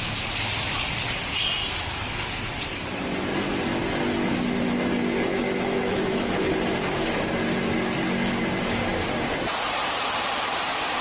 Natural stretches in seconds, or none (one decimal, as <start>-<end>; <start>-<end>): 0.0-1.6; 2.3-5.3; 6.5-11.0